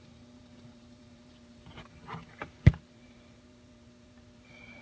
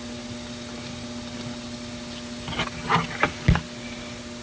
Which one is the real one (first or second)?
second